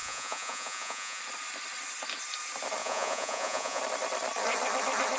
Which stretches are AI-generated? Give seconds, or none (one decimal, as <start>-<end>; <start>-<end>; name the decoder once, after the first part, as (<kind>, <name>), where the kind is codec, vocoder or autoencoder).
0.0-1.2 (vocoder, Vocos); 2.8-3.8